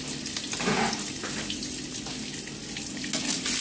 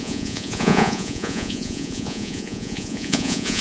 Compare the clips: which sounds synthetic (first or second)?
second